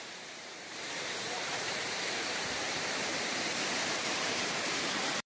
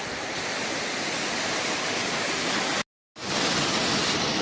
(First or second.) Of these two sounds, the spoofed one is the first